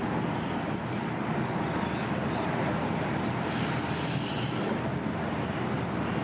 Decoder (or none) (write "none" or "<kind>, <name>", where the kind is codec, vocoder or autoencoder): none